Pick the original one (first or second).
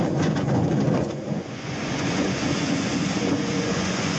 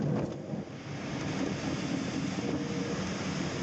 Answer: second